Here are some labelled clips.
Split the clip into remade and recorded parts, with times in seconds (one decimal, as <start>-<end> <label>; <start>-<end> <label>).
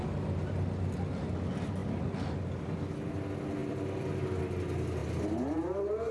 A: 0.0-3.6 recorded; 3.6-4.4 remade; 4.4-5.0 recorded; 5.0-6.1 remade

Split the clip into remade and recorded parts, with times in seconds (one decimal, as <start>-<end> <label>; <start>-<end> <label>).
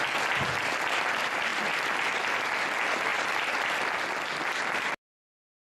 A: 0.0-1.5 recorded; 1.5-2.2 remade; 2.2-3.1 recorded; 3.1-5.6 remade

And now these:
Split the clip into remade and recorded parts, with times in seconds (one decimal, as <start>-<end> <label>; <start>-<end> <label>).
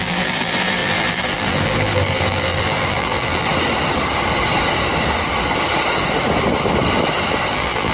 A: 0.0-3.5 remade; 3.5-7.5 recorded; 7.5-7.9 remade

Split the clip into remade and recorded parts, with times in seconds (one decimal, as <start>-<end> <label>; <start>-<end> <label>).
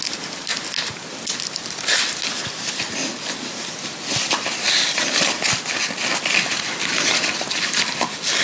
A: 0.0-8.4 recorded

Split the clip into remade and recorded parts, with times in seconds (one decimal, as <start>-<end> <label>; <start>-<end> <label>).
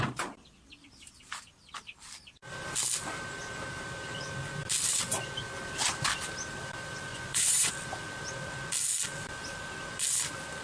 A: 0.0-7.1 recorded; 7.1-7.7 remade; 7.7-10.6 recorded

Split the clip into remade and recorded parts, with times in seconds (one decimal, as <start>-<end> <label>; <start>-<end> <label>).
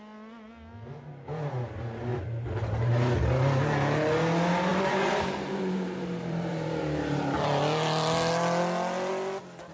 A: 0.0-2.1 recorded; 2.1-2.9 remade; 2.9-4.7 recorded; 4.7-6.8 remade; 6.8-9.7 recorded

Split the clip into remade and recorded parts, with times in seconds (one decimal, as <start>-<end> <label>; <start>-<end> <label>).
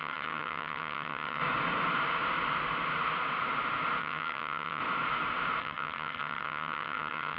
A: 0.0-1.4 remade; 1.4-4.0 recorded; 4.0-4.8 remade; 4.8-5.6 recorded; 5.6-7.4 remade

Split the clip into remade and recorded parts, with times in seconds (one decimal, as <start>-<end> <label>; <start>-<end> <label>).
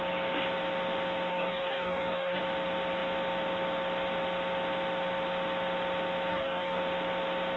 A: 0.0-1.3 recorded; 1.3-2.4 remade; 2.4-6.3 recorded; 6.3-6.8 remade; 6.8-7.6 recorded